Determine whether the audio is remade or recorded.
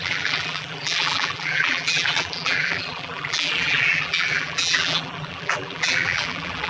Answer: remade